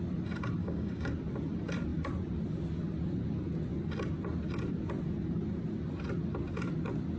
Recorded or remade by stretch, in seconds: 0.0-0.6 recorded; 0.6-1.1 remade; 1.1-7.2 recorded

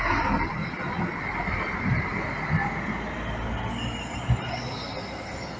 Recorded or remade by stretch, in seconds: 0.0-5.6 recorded

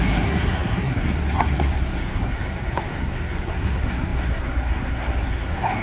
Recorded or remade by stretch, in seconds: 0.0-5.8 remade

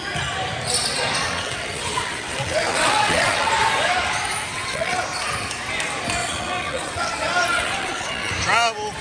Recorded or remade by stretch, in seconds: 0.0-1.2 recorded; 1.2-3.5 remade; 3.5-4.5 recorded; 4.5-5.0 remade; 5.0-6.2 recorded; 6.2-7.1 remade; 7.1-7.5 recorded; 7.5-8.3 remade; 8.3-9.0 recorded

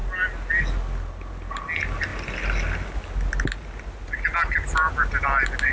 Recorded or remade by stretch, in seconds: 0.0-5.7 recorded